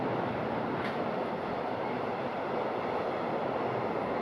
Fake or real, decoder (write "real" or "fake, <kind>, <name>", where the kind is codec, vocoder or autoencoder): real